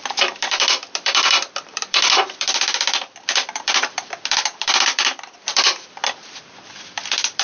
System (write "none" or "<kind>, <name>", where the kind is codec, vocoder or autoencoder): vocoder, BigVGAN v2